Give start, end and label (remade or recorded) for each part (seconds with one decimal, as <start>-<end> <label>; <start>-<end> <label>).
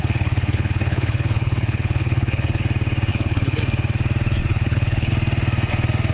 0.0-2.6 remade; 2.6-3.1 recorded; 3.1-3.6 remade; 3.6-4.5 recorded; 4.5-5.1 remade; 5.1-6.1 recorded